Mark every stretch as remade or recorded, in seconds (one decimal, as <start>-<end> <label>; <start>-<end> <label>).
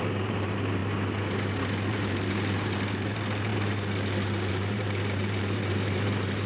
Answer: 0.0-0.8 remade; 0.8-1.9 recorded; 1.9-6.5 remade